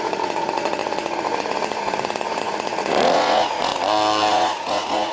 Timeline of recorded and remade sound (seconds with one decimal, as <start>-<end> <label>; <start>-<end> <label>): 0.0-3.7 remade; 3.7-4.3 recorded; 4.3-5.1 remade